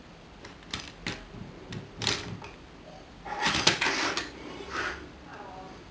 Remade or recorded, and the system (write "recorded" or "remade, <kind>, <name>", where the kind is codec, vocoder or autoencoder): recorded